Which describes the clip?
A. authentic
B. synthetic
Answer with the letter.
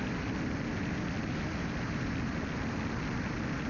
A